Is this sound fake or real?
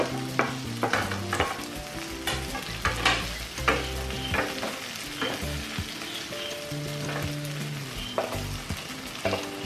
real